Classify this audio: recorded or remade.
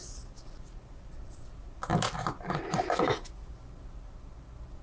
recorded